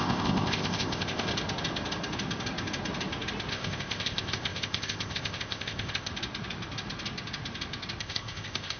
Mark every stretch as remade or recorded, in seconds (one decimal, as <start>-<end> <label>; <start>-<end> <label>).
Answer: 0.0-1.3 remade; 1.3-3.5 recorded; 3.5-6.1 remade; 6.1-8.0 recorded; 8.0-8.8 remade